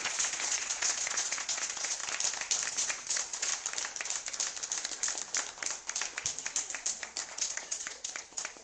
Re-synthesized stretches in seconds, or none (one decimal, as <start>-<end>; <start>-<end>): 0.0-2.0; 2.7-3.5; 7.3-8.6